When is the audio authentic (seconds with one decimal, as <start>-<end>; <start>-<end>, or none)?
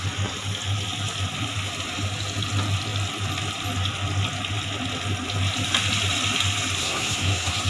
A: 0.0-6.8